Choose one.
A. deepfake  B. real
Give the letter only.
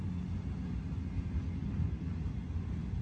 B